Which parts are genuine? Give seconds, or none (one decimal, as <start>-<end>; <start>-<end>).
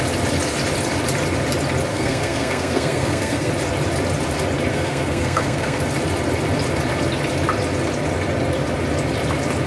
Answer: 0.0-1.9; 3.5-4.7; 5.8-9.7